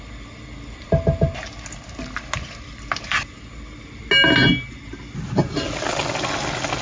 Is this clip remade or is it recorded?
recorded